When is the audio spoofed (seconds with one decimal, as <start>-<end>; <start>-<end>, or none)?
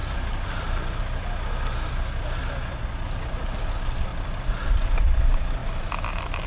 0.0-1.0; 4.1-4.7; 5.6-6.5